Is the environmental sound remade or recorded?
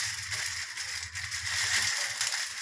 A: recorded